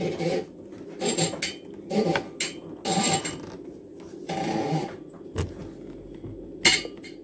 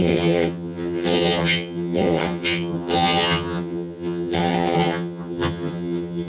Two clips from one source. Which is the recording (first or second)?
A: first